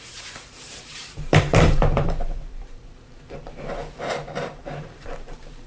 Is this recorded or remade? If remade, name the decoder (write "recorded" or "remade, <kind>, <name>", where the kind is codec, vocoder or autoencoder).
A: remade, vocoder, BigVGAN v2